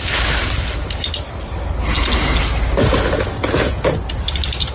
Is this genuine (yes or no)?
yes